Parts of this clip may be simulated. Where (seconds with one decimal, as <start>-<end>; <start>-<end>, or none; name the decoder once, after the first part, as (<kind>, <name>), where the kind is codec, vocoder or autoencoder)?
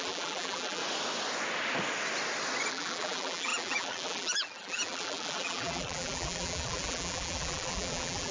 0.0-0.8 (vocoder, BigVGAN v2); 2.7-8.3